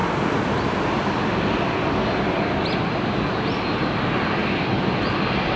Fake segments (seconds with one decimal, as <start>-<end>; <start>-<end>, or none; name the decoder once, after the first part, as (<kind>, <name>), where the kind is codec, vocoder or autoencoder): none